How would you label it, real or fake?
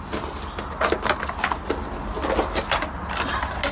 real